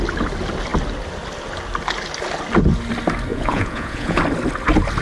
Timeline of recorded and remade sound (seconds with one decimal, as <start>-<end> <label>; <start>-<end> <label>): 0.0-3.3 recorded; 3.3-4.2 remade; 4.2-5.0 recorded